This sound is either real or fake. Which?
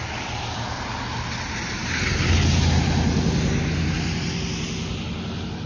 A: real